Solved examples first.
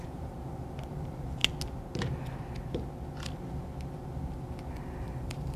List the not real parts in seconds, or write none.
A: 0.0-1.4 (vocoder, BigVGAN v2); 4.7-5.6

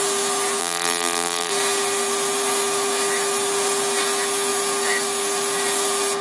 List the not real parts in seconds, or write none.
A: 0.6-1.5 (vocoder, BigVGAN v2)

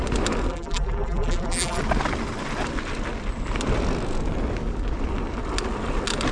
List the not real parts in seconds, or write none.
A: 0.5-1.8 (vocoder, BigVGAN v2)

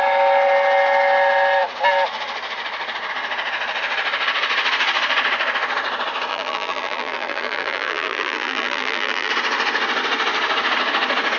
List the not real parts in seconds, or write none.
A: 6.3-9.3 (vocoder, BigVGAN v2)

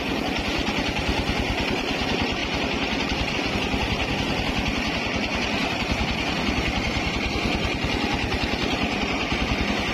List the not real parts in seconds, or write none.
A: 2.4-3.3 (vocoder, BigVGAN v2); 5.6-9.9